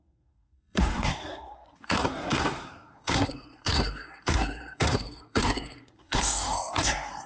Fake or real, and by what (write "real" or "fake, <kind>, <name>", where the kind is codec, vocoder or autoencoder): fake, codec, SNAC